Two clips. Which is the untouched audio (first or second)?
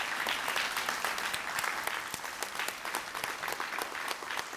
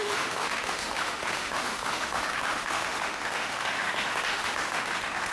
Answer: first